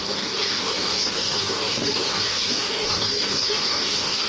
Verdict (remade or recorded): remade